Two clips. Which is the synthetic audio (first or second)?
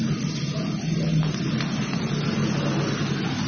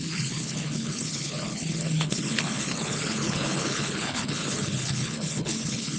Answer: second